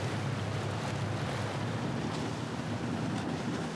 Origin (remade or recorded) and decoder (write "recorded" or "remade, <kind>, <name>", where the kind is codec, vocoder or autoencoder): recorded